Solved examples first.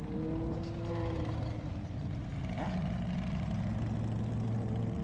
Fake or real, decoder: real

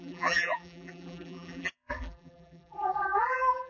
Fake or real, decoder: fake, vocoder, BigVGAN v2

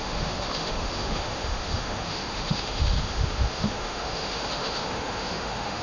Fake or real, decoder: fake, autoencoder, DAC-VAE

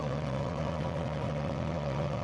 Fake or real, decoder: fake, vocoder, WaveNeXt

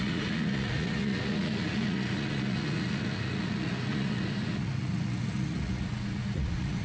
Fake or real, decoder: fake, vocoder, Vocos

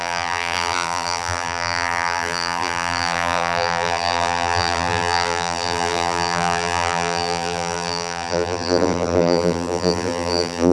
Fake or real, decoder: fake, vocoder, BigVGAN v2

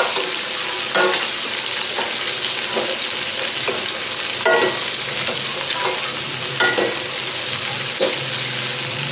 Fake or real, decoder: real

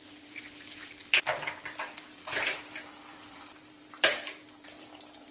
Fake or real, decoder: fake, vocoder, BigVGAN v2